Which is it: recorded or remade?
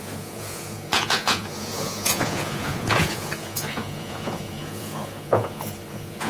remade